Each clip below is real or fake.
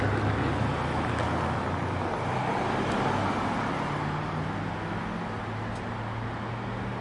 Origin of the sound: real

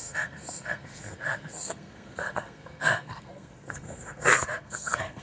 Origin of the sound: fake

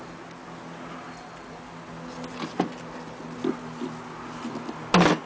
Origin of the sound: real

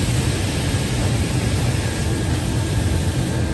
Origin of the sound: real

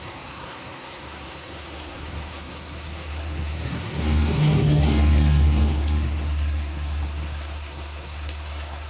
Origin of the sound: fake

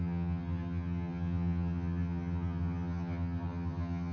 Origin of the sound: fake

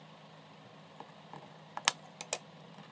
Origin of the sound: real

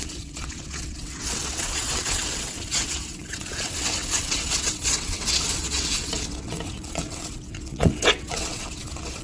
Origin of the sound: fake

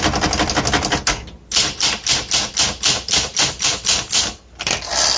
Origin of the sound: real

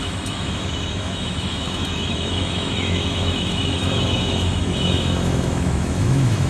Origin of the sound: fake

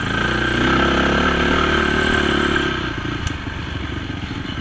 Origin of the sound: real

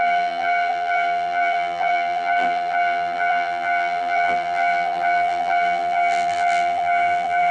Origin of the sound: fake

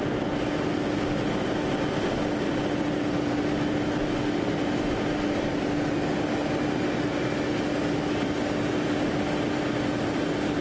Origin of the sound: real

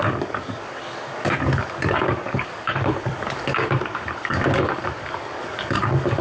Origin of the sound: fake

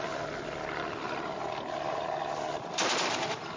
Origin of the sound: real